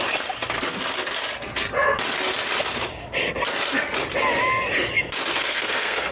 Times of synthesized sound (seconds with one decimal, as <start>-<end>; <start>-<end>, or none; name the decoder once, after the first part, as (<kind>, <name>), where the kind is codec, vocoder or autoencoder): 5.3-6.1 (codec, SNAC)